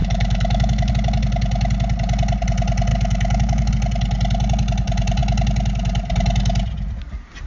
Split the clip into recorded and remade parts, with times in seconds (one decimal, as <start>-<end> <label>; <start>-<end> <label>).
0.0-0.9 remade; 0.9-2.9 recorded; 2.9-3.7 remade; 3.7-7.5 recorded

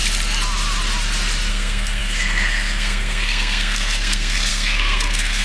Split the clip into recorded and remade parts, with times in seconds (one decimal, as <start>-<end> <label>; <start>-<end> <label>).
0.0-1.5 recorded; 1.5-5.4 remade